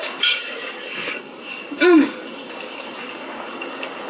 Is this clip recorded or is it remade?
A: remade